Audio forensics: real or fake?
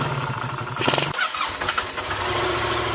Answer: real